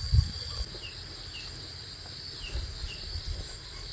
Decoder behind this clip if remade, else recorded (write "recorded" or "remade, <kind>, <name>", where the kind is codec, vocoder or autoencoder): recorded